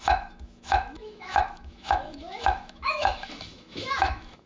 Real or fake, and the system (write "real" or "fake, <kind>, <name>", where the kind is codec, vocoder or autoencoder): fake, autoencoder, DAC-VAE